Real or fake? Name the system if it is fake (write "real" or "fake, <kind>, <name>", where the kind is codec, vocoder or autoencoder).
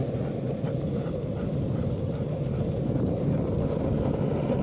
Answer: real